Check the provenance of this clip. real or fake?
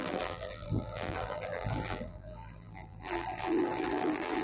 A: fake